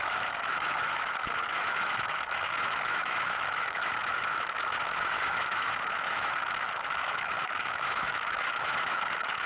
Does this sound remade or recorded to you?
remade